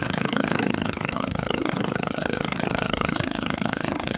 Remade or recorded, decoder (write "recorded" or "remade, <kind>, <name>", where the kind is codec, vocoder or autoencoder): remade, codec, SNAC